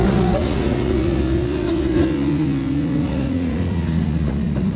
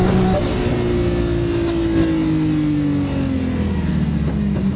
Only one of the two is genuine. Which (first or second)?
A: second